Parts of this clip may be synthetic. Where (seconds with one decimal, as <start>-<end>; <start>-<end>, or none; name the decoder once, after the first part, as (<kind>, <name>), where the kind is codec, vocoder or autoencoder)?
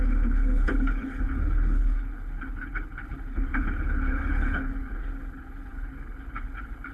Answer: 0.0-6.9 (codec, HILCodec)